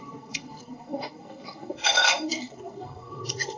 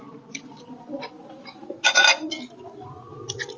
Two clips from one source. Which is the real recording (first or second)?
second